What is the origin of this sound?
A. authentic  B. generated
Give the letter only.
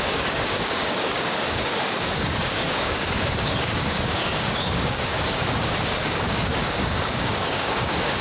B